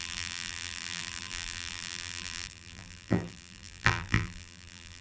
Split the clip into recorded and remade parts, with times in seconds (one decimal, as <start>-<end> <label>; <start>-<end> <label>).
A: 0.0-5.0 remade